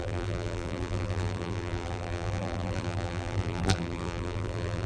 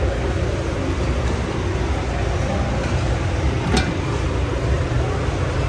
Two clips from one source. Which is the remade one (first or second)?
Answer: first